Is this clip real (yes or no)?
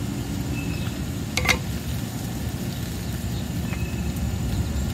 yes